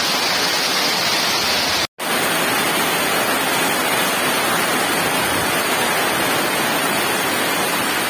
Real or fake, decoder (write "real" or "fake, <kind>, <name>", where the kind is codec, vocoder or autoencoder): real